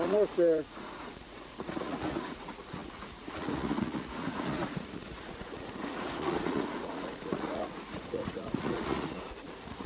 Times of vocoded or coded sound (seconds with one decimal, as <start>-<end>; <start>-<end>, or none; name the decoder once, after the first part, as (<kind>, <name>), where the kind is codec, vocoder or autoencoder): 0.0-9.9 (vocoder, Vocos)